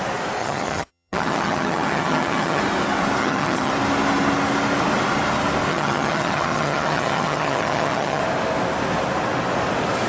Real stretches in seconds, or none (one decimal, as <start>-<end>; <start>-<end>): 0.0-0.4; 2.6-3.2; 3.7-5.7; 8.2-10.1